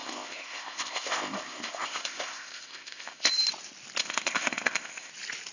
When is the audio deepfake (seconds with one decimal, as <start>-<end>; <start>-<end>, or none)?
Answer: 0.0-3.3; 4.0-5.1